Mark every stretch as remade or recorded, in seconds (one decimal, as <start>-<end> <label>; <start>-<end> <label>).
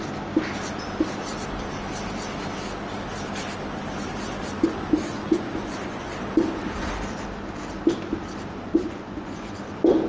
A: 0.0-5.1 recorded; 5.1-6.1 remade; 6.1-8.7 recorded; 8.7-9.6 remade; 9.6-10.1 recorded